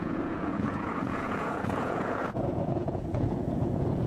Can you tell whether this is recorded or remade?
remade